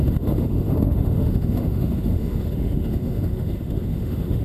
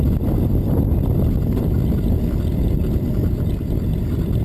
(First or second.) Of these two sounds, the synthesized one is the first